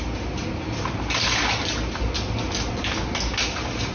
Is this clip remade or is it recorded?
recorded